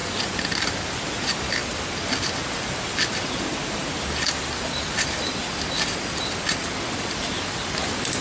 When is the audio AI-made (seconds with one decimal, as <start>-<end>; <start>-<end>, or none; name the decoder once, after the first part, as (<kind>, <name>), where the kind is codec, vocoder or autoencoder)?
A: none